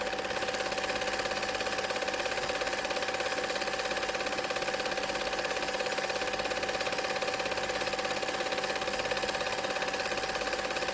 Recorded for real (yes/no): yes